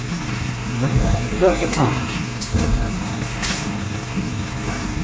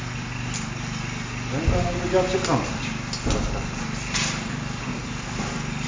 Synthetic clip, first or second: first